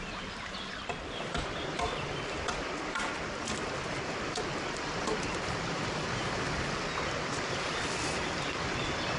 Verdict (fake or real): real